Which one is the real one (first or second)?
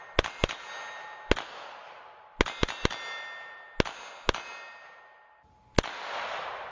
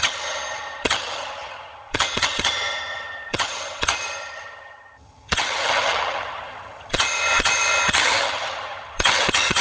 first